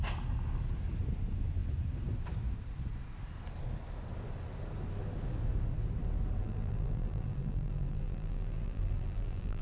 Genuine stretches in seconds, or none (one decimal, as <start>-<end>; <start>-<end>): 0.0-6.4